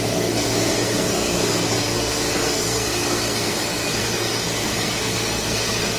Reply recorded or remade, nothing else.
remade